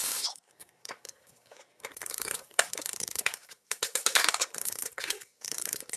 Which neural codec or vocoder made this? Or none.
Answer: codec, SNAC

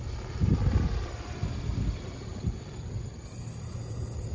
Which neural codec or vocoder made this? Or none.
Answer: none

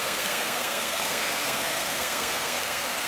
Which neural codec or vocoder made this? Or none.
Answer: codec, SNAC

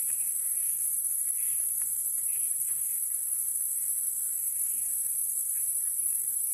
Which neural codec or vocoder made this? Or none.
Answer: codec, SNAC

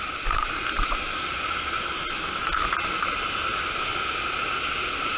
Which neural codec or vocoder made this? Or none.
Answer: none